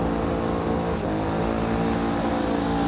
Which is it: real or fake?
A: real